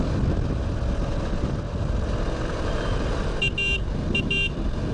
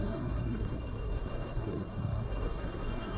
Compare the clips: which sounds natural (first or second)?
first